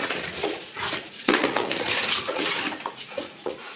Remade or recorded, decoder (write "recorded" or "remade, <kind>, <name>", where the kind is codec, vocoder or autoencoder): remade, vocoder, Vocos